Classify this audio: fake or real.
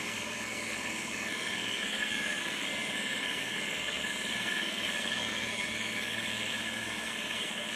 fake